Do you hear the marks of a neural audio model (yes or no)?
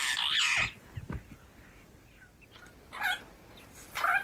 no